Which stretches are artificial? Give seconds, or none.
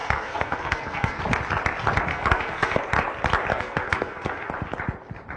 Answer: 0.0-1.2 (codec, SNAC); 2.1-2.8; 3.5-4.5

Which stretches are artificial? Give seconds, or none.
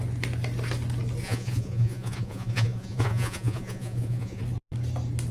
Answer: 1.2-4.4 (vocoder, Vocos)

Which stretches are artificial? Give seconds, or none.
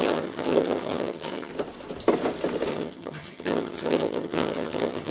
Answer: 0.0-1.5 (vocoder, HiFi-GAN); 2.7-5.1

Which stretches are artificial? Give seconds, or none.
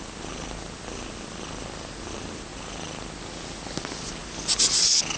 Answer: none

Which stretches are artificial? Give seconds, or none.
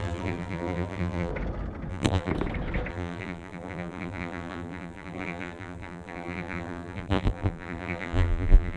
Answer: 0.0-1.3 (vocoder, BigVGAN v2); 1.9-2.3; 2.9-8.8